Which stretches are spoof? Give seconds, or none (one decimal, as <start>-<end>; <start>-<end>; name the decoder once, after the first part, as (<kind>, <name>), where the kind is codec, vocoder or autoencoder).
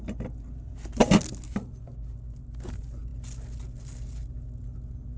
none